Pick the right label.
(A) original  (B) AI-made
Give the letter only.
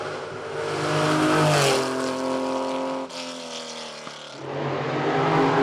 A